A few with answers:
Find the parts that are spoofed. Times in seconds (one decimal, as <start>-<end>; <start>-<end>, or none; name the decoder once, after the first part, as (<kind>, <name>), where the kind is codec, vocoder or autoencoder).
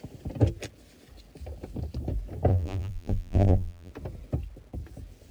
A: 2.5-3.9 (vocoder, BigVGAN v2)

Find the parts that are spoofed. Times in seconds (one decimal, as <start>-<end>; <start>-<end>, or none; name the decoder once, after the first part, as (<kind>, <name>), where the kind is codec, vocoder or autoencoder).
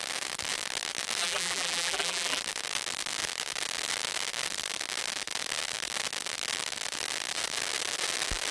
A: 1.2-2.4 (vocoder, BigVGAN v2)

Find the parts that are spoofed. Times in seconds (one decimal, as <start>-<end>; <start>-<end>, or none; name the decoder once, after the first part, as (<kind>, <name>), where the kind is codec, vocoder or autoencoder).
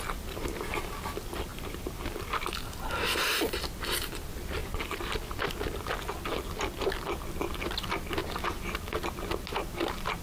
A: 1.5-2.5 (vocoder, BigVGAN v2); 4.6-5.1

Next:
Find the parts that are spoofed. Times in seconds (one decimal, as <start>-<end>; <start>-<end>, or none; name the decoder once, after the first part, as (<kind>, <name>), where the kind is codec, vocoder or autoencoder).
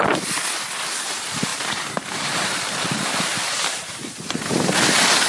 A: 1.5-4.7 (vocoder, BigVGAN v2)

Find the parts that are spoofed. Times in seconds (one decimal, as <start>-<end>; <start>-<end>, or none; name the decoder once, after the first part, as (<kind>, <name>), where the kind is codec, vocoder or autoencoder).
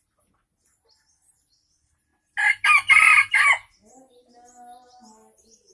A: none